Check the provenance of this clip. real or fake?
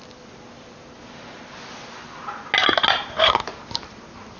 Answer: real